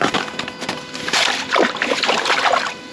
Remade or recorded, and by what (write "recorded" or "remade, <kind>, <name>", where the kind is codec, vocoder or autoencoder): remade, vocoder, BigVGAN v2